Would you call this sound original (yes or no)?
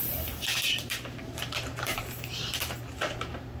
no